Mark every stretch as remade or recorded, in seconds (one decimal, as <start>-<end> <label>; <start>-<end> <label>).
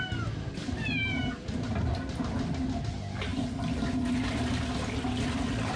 0.0-5.8 recorded